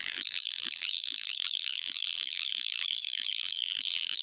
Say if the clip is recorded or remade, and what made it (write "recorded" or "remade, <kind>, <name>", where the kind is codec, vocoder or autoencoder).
remade, vocoder, BigVGAN v2